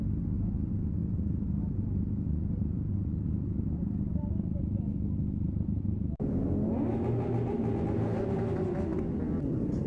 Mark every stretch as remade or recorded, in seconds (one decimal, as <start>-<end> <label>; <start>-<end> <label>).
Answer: 0.0-9.9 recorded